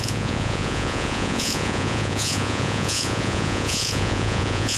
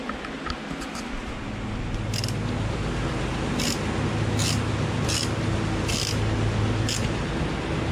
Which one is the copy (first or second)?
first